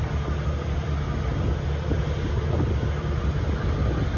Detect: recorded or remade recorded